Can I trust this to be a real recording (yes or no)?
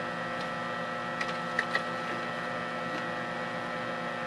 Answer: yes